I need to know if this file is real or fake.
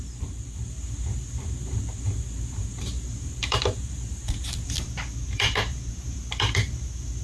fake